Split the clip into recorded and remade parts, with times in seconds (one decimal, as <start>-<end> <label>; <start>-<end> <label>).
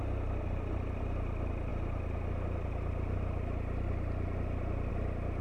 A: 0.0-5.4 recorded